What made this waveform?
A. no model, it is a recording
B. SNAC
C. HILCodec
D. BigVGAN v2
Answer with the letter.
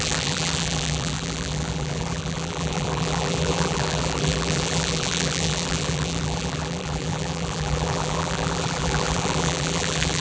D